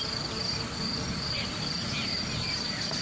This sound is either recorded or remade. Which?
recorded